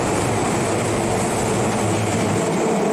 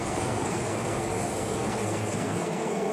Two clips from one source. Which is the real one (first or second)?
first